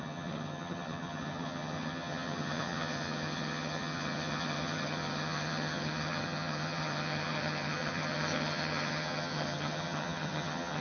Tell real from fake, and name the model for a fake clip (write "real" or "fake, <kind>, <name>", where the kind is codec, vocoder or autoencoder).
fake, vocoder, HiFi-GAN